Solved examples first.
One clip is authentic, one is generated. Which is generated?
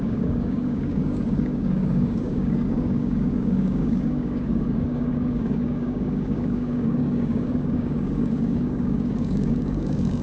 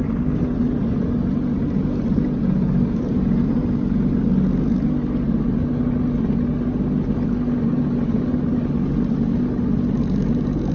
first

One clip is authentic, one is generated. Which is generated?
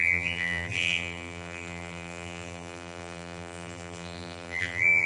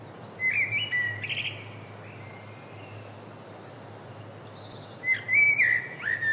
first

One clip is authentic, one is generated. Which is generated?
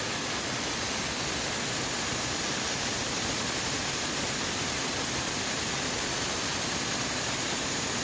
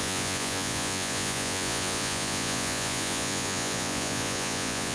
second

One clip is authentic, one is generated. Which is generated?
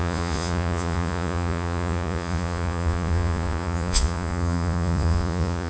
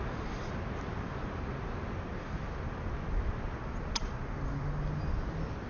first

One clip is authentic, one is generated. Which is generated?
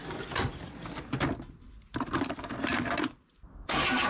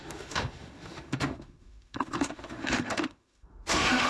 second